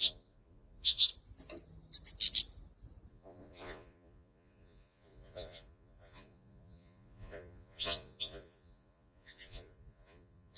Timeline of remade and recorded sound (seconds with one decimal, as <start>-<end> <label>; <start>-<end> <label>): 0.0-1.1 remade; 1.1-3.1 recorded; 3.1-10.6 remade